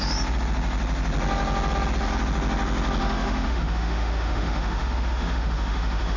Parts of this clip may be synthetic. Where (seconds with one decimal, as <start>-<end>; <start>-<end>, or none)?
3.0-6.2